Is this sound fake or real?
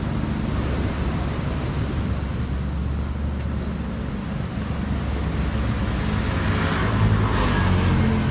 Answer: real